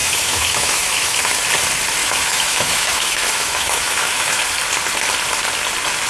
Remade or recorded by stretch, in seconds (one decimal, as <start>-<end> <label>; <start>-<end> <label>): 0.0-1.4 remade; 1.4-2.0 recorded; 2.0-4.4 remade; 4.4-6.1 recorded